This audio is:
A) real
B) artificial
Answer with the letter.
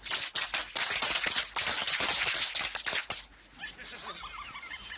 A